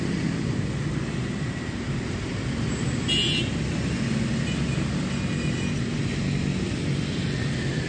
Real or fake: real